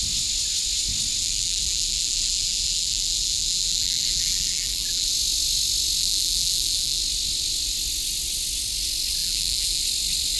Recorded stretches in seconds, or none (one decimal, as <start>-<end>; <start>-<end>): 0.0-1.2; 5.1-6.0; 7.0-9.2; 9.8-10.4